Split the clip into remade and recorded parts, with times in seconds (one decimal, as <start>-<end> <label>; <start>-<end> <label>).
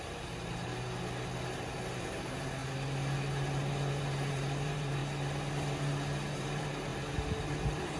0.0-0.7 remade; 0.7-2.0 recorded; 2.0-2.6 remade; 2.6-4.3 recorded; 4.3-5.0 remade; 5.0-6.3 recorded; 6.3-6.9 remade; 6.9-7.6 recorded; 7.6-8.0 remade